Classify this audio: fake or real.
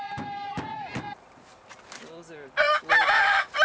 real